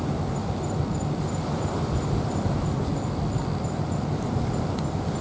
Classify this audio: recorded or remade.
recorded